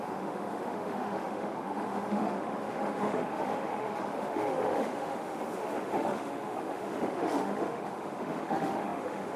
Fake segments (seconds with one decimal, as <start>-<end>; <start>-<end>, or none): 0.0-9.4